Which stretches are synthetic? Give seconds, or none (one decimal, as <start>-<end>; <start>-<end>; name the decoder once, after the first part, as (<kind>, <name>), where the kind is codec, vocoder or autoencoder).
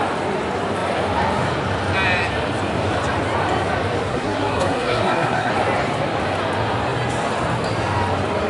4.1-5.5 (codec, SNAC)